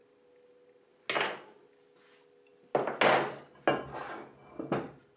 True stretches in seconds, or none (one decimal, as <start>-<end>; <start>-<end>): 0.0-5.2